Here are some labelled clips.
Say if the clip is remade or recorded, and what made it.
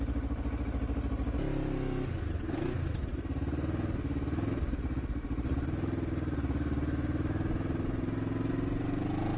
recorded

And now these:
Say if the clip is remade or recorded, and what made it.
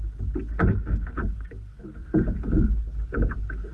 recorded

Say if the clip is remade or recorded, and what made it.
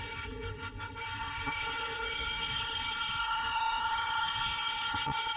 remade, codec, HILCodec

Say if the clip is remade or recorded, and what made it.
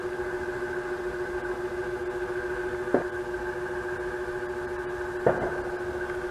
recorded